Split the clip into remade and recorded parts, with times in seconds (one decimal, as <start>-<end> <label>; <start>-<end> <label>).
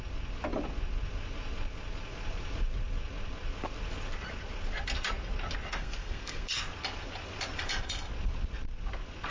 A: 0.0-5.7 recorded; 5.7-6.6 remade; 6.6-9.3 recorded